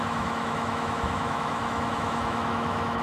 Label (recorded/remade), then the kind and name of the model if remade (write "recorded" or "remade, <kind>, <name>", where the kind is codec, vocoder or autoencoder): remade, autoencoder, DAC-VAE